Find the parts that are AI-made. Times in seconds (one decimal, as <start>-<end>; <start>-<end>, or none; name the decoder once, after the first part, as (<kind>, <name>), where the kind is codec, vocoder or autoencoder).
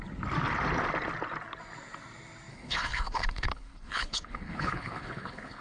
2.5-5.6 (codec, HILCodec)